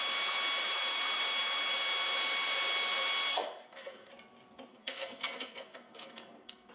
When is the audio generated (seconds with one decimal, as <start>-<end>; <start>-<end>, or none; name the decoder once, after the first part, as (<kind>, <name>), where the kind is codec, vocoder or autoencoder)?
3.3-4.1 (codec, SNAC); 4.7-6.7